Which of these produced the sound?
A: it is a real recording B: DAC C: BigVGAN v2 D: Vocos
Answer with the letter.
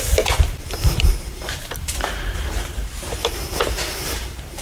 C